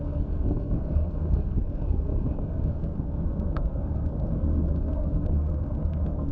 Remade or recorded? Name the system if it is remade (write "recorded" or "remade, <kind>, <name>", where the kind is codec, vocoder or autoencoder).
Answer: remade, codec, SNAC